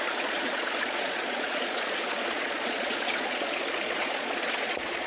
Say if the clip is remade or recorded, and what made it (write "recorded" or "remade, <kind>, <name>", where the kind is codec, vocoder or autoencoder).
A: remade, vocoder, Vocos